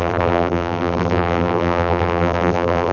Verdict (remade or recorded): remade